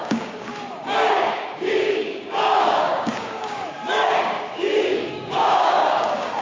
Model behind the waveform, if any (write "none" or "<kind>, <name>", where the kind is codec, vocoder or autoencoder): codec, DAC